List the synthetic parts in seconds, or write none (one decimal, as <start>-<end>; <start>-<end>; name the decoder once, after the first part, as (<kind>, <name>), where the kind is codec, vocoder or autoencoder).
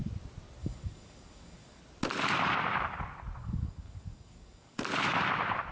0.6-1.8 (codec, DAC); 3.4-4.8